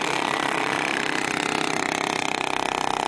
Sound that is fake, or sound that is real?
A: real